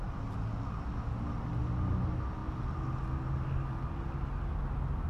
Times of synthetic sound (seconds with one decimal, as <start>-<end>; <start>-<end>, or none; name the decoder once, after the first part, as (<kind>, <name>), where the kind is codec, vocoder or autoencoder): none